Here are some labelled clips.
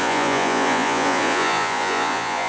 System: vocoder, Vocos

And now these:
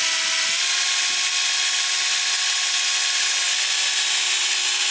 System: none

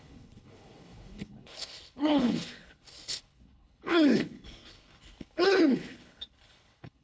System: codec, HILCodec